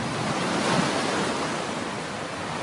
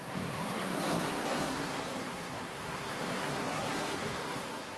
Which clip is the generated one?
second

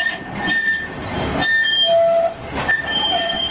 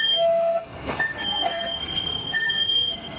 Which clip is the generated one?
second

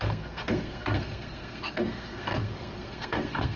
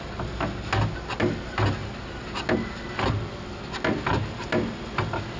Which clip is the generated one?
first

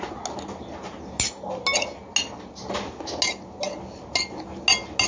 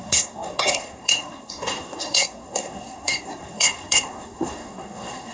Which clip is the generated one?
second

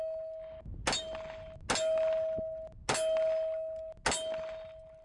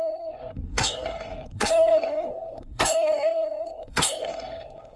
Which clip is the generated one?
second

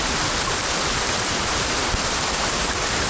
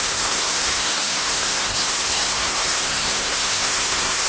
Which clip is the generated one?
second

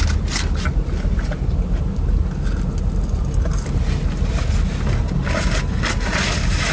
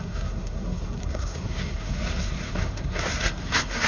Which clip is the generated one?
second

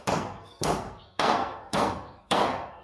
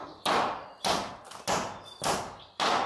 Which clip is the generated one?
first